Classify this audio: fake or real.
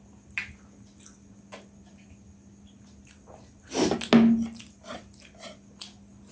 real